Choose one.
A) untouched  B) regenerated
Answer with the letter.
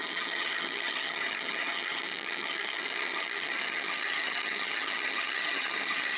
B